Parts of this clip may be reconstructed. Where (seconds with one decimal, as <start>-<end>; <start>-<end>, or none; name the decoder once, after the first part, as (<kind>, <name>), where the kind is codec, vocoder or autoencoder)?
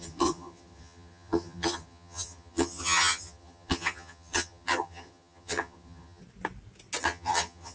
0.0-6.2 (vocoder, HiFi-GAN); 7.0-7.7